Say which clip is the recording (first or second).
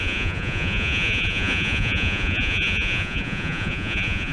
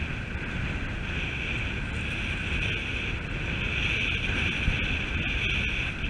second